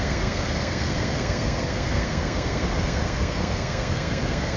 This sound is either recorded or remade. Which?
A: remade